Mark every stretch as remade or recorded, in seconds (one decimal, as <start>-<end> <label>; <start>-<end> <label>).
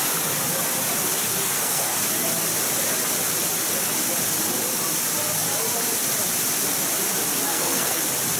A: 0.0-1.4 recorded; 1.4-2.0 remade; 2.0-7.5 recorded; 7.5-8.0 remade; 8.0-8.4 recorded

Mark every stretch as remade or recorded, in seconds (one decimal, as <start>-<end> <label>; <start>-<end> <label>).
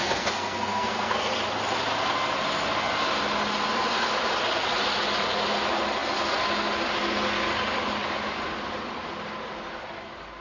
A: 0.0-1.3 remade; 1.3-10.4 recorded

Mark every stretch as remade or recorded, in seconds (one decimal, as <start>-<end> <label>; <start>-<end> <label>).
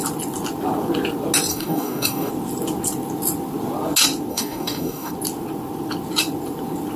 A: 0.0-1.5 recorded; 1.5-2.3 remade; 2.3-4.3 recorded; 4.3-5.1 remade; 5.1-7.0 recorded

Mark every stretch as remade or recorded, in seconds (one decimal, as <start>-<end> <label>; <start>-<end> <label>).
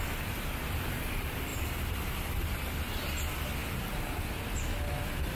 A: 0.0-1.5 recorded; 1.5-2.1 remade; 2.1-3.6 recorded; 3.6-4.1 remade; 4.1-5.4 recorded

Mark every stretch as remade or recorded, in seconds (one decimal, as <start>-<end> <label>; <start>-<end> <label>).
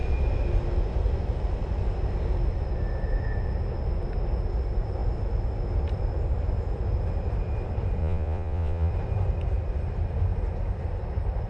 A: 0.0-8.0 recorded; 8.0-8.9 remade; 8.9-11.5 recorded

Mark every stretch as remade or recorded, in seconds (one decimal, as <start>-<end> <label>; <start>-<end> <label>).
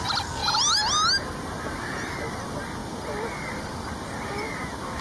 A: 0.0-5.0 recorded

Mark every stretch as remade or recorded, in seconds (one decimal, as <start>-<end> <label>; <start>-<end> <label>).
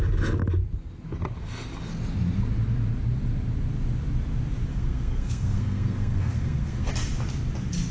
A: 0.0-4.7 recorded; 4.7-6.9 remade; 6.9-7.9 recorded